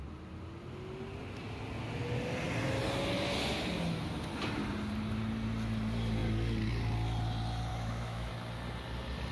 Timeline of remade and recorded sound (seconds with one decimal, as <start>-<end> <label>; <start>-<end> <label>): 0.0-7.7 recorded; 7.7-8.3 remade; 8.3-9.3 recorded